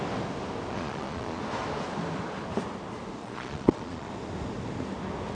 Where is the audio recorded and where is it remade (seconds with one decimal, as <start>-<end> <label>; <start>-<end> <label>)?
0.0-0.7 recorded; 0.7-1.4 remade; 1.4-3.2 recorded; 3.2-4.1 remade; 4.1-5.3 recorded